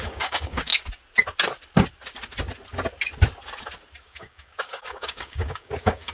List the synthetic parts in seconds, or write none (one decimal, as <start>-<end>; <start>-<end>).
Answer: 0.0-0.7; 4.0-6.1